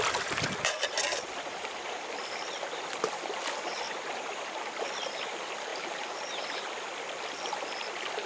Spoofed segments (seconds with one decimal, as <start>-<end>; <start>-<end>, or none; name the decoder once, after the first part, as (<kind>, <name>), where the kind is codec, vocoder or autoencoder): 5.7-8.3 (vocoder, BigVGAN v2)